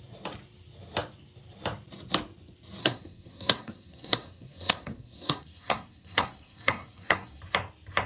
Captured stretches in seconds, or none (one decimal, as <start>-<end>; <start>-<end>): 0.0-2.8; 7.4-8.1

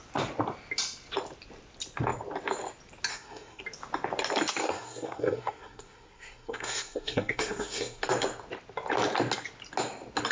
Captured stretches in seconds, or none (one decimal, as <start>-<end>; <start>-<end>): 0.0-3.1; 3.6-4.6; 8.0-10.3

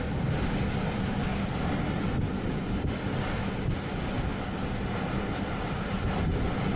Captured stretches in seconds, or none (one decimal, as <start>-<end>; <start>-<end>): 0.0-6.8

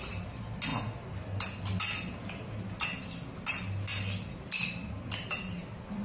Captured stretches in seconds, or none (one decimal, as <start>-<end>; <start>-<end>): 0.0-6.0

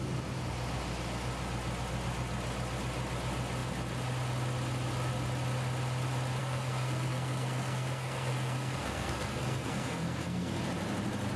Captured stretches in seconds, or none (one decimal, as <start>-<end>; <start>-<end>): 0.0-6.4; 10.6-11.4

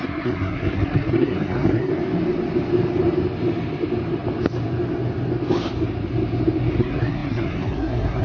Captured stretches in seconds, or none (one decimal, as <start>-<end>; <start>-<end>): 1.9-6.8